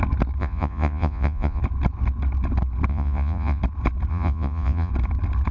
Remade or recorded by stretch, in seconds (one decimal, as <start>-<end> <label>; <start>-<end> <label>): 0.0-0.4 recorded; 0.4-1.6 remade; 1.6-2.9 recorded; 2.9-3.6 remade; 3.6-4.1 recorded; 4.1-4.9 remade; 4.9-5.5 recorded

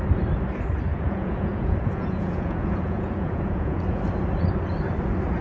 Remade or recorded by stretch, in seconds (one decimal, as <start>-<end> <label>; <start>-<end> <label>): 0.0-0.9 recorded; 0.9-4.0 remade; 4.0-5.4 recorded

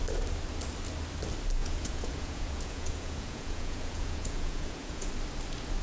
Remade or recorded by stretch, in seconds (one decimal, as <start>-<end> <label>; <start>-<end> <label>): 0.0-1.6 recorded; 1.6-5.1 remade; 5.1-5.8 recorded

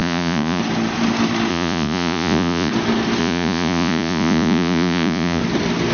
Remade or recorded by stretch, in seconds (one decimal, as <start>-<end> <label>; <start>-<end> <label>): 0.0-0.6 remade; 0.6-1.5 recorded; 1.5-2.7 remade; 2.7-3.2 recorded; 3.2-5.4 remade; 5.4-5.9 recorded

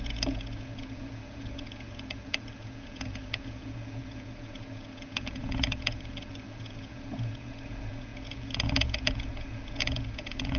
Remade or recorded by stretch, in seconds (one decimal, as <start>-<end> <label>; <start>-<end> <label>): 0.0-10.6 remade

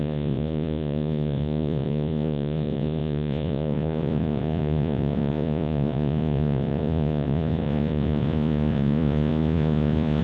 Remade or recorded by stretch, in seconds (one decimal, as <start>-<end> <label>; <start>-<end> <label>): 0.0-10.2 remade